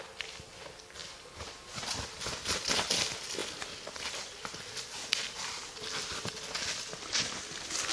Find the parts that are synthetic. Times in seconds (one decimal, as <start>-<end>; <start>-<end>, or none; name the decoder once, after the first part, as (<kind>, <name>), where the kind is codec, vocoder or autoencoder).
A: none